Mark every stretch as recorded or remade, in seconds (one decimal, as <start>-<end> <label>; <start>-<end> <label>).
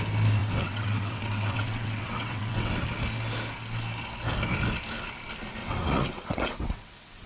0.0-0.4 recorded; 0.4-2.8 remade; 2.8-5.6 recorded; 5.6-7.3 remade